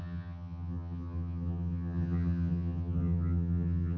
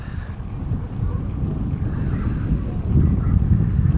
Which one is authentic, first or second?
second